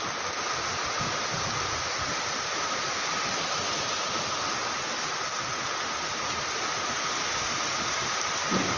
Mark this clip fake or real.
real